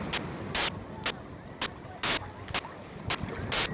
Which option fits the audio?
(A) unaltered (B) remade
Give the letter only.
A